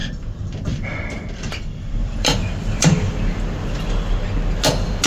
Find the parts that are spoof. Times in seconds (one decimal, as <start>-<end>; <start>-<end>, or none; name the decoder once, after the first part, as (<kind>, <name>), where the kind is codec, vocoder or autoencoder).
0.0-3.1 (vocoder, BigVGAN v2)